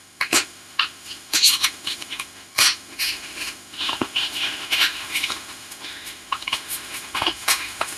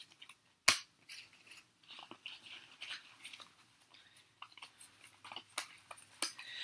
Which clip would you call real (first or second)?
second